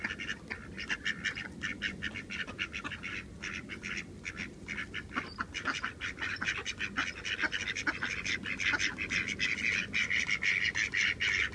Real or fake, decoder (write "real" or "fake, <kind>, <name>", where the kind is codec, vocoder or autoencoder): real